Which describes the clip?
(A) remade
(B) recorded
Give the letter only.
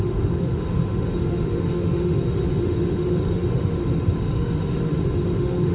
A